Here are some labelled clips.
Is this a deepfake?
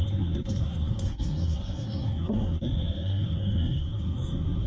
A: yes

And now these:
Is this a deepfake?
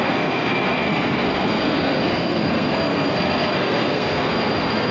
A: yes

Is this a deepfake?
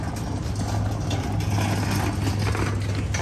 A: no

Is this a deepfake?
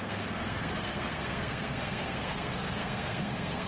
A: yes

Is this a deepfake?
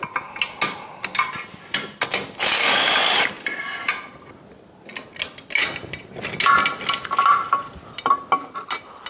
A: no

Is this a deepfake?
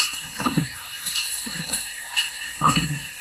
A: yes